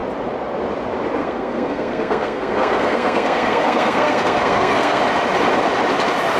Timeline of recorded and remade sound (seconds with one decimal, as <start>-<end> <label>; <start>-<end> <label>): 0.0-1.2 recorded; 1.2-5.0 remade; 5.0-6.4 recorded